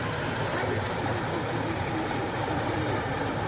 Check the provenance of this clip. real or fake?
fake